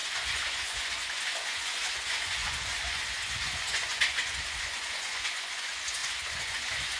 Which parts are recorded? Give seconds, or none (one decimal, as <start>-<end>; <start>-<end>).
none